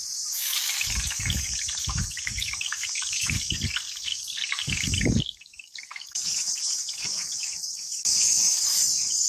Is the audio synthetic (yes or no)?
yes